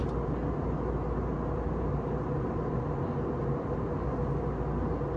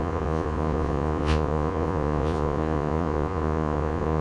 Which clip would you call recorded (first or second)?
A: first